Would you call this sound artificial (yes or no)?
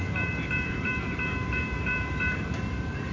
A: yes